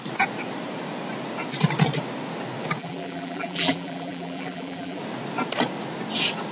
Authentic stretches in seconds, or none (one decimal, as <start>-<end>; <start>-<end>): 0.0-2.8; 5.0-6.5